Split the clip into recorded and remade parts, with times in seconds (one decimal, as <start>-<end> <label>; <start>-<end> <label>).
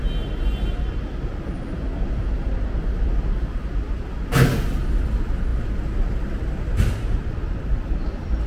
0.0-8.5 recorded